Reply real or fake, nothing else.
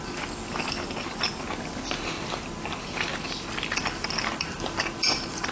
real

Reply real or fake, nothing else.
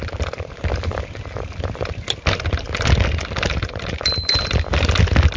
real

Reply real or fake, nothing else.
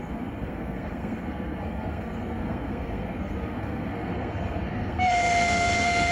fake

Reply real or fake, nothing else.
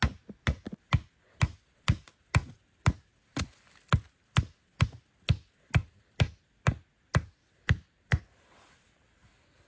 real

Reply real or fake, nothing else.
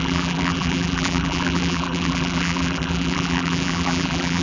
fake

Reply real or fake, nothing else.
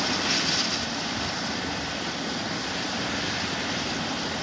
real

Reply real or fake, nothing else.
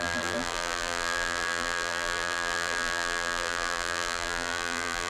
fake